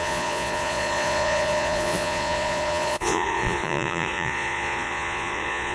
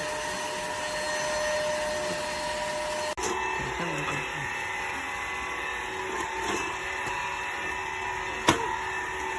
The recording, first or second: second